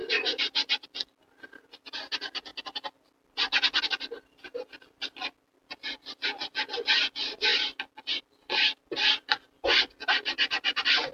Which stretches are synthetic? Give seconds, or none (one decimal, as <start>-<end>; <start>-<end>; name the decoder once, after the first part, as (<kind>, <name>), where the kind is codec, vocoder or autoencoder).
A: none